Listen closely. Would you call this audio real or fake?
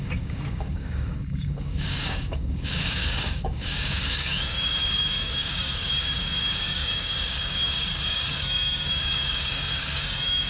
fake